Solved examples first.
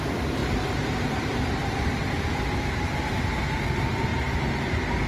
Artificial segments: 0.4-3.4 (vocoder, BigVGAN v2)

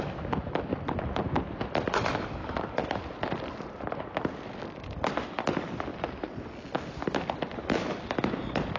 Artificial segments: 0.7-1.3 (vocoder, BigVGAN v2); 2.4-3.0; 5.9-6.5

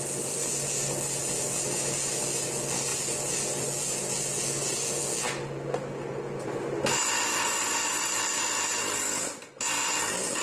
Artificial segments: none

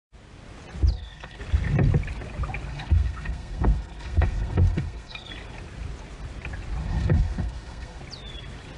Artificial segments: 0.9-1.4 (codec, SNAC); 2.7-5.3; 6.8-8.0